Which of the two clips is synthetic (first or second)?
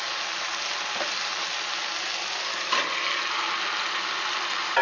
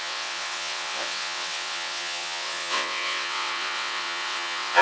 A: second